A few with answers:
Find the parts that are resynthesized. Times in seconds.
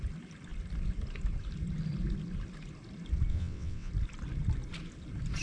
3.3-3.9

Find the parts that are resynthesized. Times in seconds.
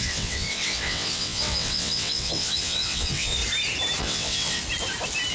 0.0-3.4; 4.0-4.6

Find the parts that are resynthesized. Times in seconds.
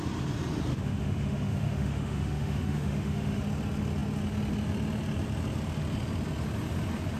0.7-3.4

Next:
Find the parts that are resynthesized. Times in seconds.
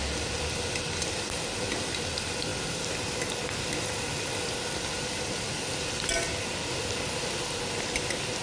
none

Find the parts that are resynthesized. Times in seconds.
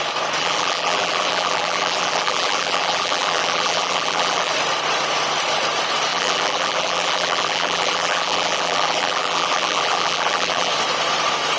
0.4-4.5; 6.1-10.7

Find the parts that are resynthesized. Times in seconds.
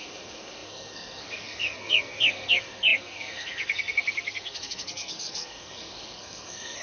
0.0-6.8